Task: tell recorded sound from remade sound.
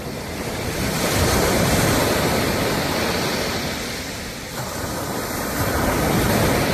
remade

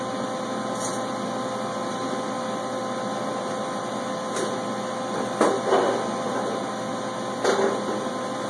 recorded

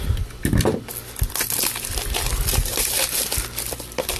recorded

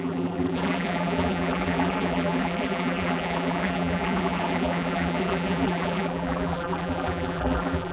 remade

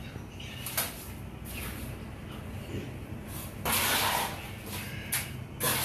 recorded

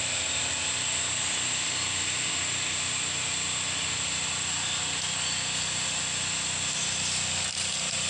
recorded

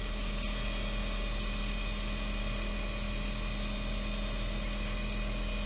recorded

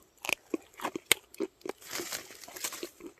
recorded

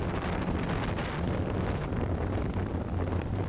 remade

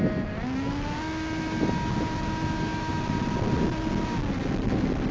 recorded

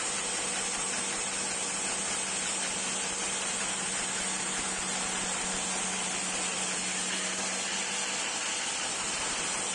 recorded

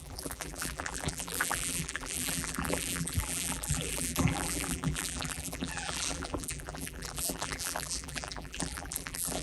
remade